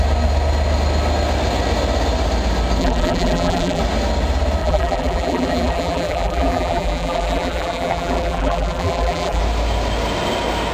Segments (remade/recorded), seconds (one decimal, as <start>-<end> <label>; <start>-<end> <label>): 0.0-2.8 recorded; 2.8-3.8 remade; 3.8-4.6 recorded; 4.6-9.4 remade; 9.4-10.7 recorded